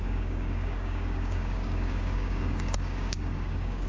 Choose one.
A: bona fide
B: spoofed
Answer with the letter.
B